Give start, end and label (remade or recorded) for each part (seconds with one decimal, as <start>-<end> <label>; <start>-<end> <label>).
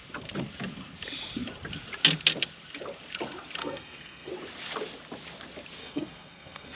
0.0-3.6 recorded; 3.6-4.3 remade; 4.3-5.8 recorded; 5.8-6.8 remade